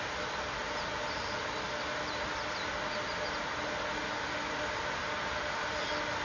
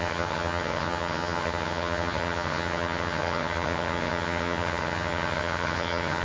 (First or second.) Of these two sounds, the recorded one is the first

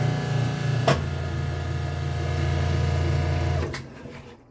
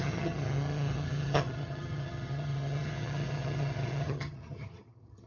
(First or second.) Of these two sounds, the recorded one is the first